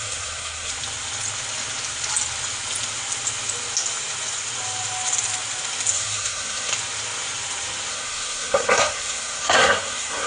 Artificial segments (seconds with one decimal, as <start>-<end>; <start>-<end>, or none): 0.0-0.7; 5.9-6.7; 7.9-10.3